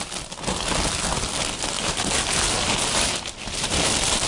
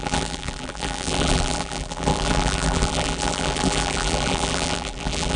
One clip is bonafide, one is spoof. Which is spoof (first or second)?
second